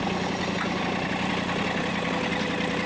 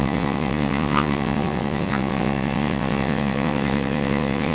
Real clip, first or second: first